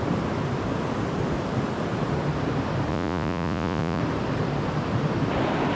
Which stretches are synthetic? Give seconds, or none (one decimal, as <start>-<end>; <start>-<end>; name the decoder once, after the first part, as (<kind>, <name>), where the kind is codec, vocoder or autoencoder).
2.9-4.0 (vocoder, Vocos)

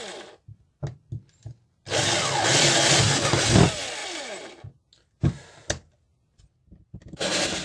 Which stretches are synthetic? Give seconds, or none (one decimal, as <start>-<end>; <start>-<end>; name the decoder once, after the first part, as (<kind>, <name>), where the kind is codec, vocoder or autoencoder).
none

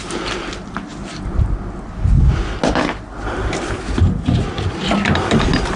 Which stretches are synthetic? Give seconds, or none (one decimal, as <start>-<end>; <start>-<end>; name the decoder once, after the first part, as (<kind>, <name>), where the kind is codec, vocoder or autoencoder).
none

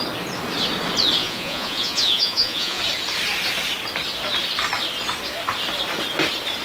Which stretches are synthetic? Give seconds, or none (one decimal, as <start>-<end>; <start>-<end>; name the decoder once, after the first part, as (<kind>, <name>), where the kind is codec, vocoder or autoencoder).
1.2-2.8 (vocoder, Vocos)

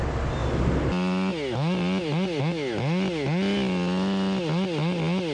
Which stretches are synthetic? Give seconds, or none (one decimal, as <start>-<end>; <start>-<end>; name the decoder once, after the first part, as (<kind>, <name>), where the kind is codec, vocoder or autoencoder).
none